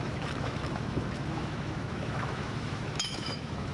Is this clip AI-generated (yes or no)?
yes